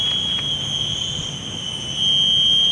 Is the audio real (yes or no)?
yes